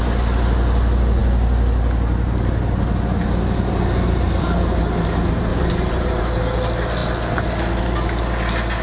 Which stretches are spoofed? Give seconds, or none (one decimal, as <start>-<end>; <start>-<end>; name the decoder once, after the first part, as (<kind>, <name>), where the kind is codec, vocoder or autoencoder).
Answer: 5.5-6.2 (vocoder, BigVGAN v2)